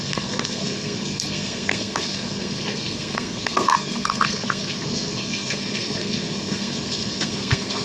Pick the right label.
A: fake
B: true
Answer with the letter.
A